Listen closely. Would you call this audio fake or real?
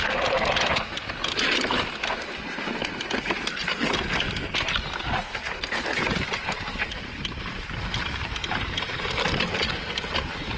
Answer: real